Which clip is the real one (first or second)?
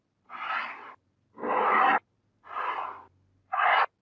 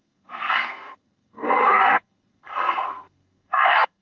first